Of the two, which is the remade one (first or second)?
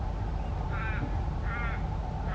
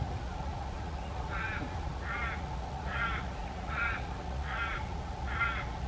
second